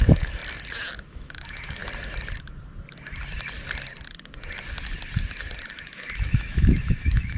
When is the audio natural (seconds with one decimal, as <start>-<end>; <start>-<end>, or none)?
0.4-1.1; 1.8-5.7